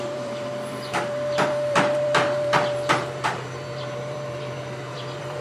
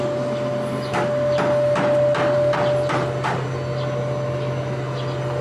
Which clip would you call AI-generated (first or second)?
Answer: first